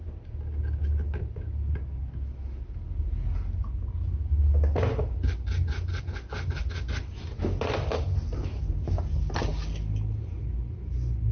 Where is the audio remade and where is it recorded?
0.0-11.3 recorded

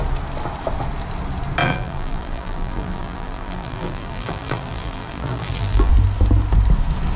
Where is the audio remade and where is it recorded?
0.0-1.6 recorded; 1.6-5.9 remade; 5.9-7.2 recorded

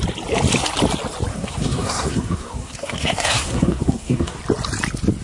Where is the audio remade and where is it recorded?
0.0-1.3 recorded; 1.3-4.4 remade; 4.4-5.2 recorded

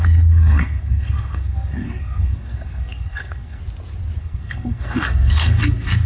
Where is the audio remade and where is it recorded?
0.0-3.6 remade; 3.6-4.2 recorded; 4.2-6.1 remade

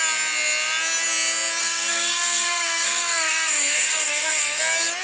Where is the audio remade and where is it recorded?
0.0-1.6 recorded; 1.6-4.6 remade; 4.6-5.0 recorded

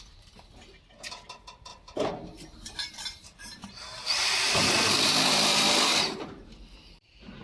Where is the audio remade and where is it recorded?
0.0-7.4 remade

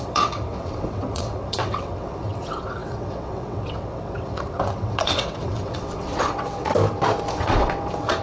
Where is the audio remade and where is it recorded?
0.0-6.7 remade; 6.7-7.3 recorded; 7.3-8.2 remade

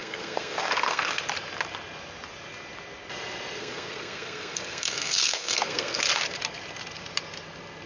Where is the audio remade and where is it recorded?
0.0-1.2 remade; 1.2-3.6 recorded; 3.6-6.0 remade; 6.0-7.9 recorded